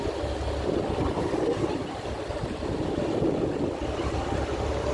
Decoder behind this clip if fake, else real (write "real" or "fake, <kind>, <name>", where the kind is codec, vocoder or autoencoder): real